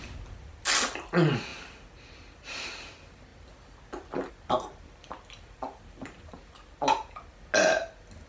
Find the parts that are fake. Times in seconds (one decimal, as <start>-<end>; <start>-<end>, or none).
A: none